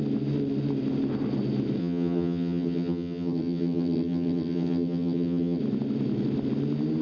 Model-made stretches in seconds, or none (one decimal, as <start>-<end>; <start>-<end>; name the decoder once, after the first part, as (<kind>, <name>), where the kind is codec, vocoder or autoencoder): 1.8-5.6 (vocoder, HiFi-GAN)